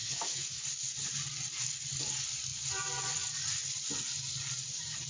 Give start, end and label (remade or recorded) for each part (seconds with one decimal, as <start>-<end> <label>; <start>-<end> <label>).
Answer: 0.0-0.6 remade; 0.6-5.1 recorded

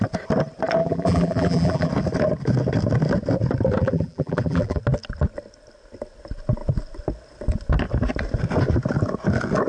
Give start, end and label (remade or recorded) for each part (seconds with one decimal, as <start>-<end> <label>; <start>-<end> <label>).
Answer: 0.0-0.8 recorded; 0.8-1.9 remade; 1.9-3.8 recorded; 3.8-4.8 remade; 4.8-9.7 recorded